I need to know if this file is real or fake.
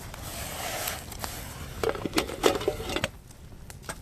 real